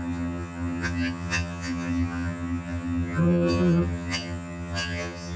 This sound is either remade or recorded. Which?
remade